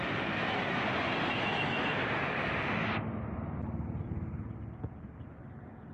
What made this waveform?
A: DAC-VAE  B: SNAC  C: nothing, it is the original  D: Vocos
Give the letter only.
C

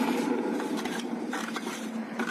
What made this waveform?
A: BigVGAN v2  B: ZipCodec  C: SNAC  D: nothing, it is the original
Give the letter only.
A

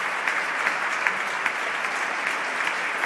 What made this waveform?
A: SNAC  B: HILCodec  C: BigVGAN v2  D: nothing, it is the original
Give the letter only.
D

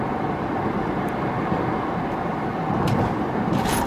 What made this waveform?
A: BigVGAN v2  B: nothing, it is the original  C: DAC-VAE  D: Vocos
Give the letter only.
A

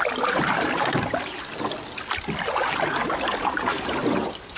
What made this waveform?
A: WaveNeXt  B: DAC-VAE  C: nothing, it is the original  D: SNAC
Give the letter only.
C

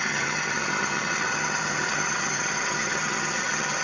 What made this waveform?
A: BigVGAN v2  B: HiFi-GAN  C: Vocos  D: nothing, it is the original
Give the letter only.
B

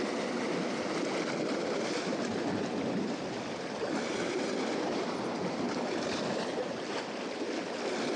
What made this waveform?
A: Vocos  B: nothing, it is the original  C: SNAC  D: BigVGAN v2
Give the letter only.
B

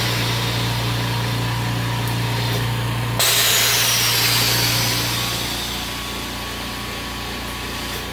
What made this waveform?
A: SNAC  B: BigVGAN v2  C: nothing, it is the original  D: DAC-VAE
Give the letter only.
C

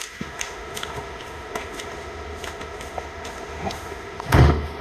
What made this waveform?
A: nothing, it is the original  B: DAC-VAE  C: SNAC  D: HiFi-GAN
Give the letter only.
B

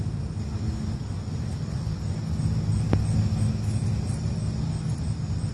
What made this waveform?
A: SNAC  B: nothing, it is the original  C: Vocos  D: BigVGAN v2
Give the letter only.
B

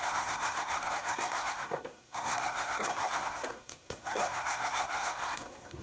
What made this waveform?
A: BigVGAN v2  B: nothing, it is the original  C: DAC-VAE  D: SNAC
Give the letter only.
D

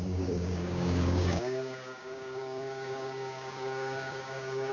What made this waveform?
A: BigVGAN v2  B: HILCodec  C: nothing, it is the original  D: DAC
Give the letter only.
D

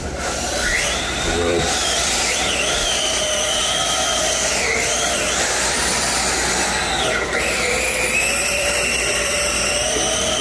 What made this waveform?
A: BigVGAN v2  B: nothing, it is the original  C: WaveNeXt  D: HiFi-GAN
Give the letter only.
A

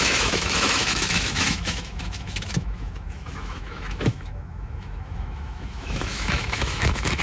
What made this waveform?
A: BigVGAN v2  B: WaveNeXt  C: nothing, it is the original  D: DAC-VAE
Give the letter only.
D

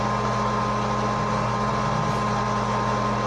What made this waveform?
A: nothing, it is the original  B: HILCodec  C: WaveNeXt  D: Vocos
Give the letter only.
A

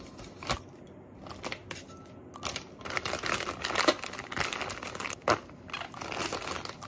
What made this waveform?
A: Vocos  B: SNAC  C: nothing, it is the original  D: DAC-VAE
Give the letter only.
C